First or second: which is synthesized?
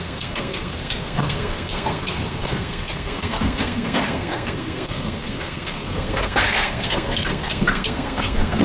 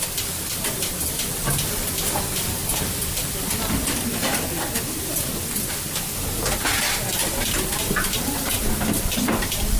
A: first